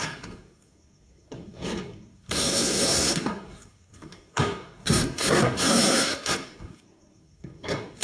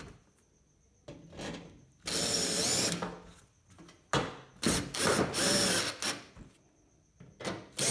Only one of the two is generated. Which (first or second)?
first